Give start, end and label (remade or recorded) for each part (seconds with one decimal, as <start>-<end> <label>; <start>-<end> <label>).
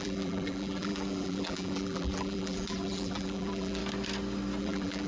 0.0-3.8 remade; 3.8-4.6 recorded; 4.6-5.1 remade